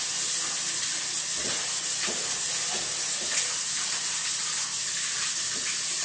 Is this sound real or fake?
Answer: real